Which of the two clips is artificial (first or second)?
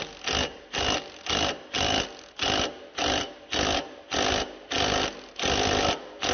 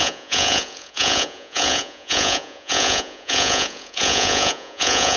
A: second